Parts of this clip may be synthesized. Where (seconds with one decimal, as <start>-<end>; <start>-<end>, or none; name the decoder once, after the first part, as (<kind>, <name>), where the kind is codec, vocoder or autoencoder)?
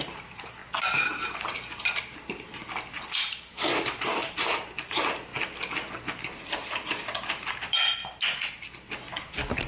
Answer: 0.0-0.6 (vocoder, BigVGAN v2); 1.2-2.6; 3.1-5.3; 6.4-8.0